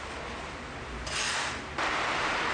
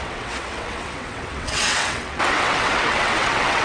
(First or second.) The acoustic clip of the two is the first